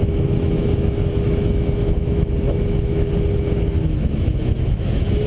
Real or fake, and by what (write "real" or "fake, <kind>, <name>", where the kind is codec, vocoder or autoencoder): fake, autoencoder, DAC-VAE